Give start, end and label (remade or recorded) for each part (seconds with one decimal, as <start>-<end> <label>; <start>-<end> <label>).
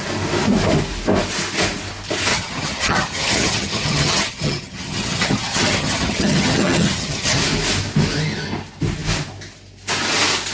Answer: 0.0-2.3 recorded; 2.3-7.4 remade; 7.4-10.5 recorded